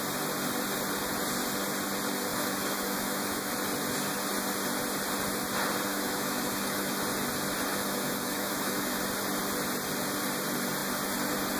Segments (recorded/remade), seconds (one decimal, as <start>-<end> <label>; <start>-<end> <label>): 0.0-2.3 recorded; 2.3-3.5 remade; 3.5-5.9 recorded; 5.9-7.0 remade; 7.0-7.7 recorded; 7.7-9.0 remade; 9.0-11.6 recorded

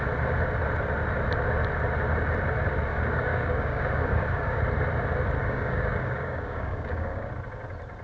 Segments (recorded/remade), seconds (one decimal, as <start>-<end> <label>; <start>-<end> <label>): 0.0-2.9 recorded; 2.9-4.6 remade; 4.6-5.4 recorded; 5.4-7.3 remade; 7.3-8.0 recorded

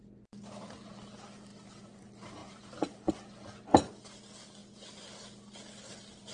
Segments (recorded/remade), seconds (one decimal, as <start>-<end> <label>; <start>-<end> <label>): 0.0-1.5 recorded; 1.5-2.0 remade; 2.0-2.4 recorded; 2.4-3.1 remade; 3.1-6.3 recorded

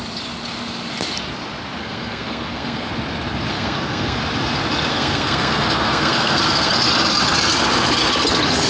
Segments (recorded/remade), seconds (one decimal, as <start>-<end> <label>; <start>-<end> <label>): 0.0-1.8 recorded; 1.8-2.9 remade; 2.9-3.5 recorded; 3.5-4.2 remade; 4.2-4.9 recorded; 4.9-6.7 remade; 6.7-8.7 recorded

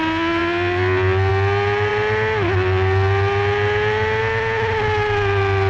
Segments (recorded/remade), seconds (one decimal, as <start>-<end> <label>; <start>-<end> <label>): 0.0-5.7 recorded

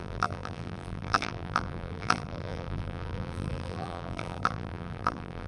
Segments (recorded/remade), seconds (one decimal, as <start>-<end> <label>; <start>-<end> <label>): 0.0-5.5 remade

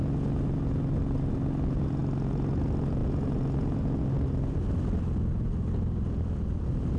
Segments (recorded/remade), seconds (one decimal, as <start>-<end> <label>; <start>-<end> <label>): 0.0-7.0 recorded